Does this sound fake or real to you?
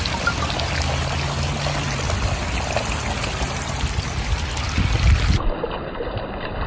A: real